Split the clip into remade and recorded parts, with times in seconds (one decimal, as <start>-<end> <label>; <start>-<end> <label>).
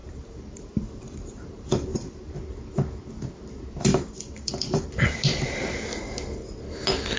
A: 0.0-2.3 remade; 2.3-3.9 recorded; 3.9-4.9 remade; 4.9-7.2 recorded